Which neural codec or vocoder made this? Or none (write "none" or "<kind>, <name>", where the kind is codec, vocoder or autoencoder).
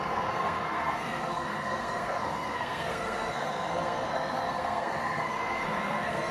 codec, SNAC